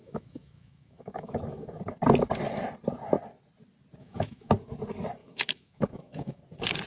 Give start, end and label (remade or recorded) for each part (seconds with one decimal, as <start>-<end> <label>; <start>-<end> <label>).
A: 0.0-1.8 remade; 1.8-4.0 recorded; 4.0-4.5 remade; 4.5-5.2 recorded; 5.2-6.4 remade; 6.4-6.9 recorded